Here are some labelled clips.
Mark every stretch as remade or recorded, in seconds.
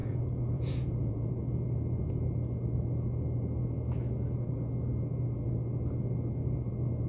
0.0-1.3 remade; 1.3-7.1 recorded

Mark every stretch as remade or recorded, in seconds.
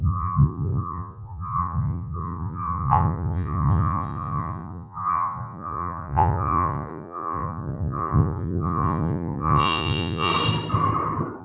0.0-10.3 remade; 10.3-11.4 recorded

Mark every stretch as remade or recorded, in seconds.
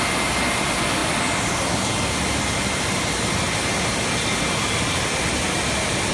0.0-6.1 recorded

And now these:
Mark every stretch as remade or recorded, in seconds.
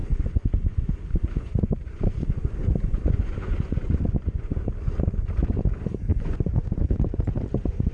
0.0-4.7 remade; 4.7-6.1 recorded; 6.1-7.4 remade; 7.4-7.9 recorded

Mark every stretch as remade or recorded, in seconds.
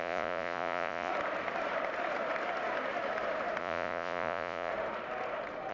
0.0-1.1 remade; 1.1-3.6 recorded; 3.6-4.7 remade; 4.7-5.7 recorded